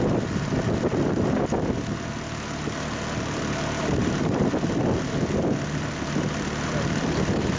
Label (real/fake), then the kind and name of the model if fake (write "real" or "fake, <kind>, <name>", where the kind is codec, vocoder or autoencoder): real